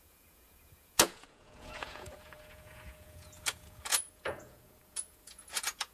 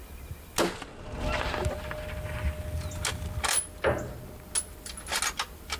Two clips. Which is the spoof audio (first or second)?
first